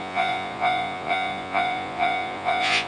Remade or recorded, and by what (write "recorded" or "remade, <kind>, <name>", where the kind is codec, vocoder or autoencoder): remade, vocoder, Vocos